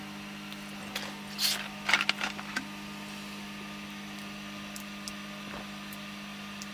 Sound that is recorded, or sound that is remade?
recorded